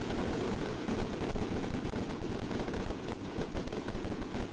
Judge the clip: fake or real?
fake